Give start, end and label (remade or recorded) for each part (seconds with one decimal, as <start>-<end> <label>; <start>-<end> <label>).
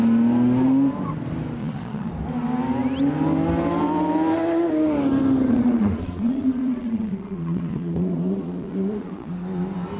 0.0-1.6 recorded; 1.6-2.1 remade; 2.1-5.5 recorded; 5.5-9.3 remade; 9.3-10.0 recorded